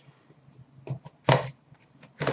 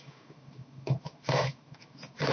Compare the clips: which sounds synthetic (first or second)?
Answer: second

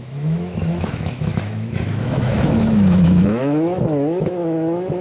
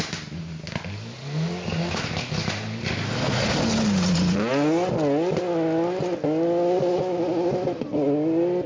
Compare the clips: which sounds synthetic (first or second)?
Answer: first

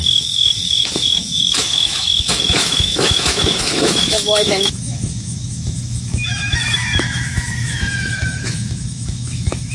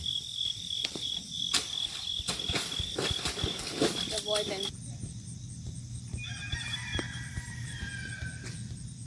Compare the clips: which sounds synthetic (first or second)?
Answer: first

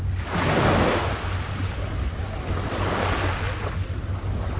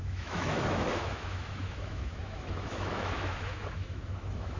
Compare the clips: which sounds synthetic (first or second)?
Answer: second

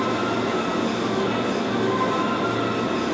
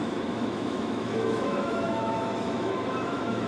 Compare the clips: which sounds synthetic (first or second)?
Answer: second